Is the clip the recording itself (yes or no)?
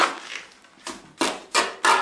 yes